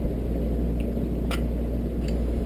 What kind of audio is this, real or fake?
real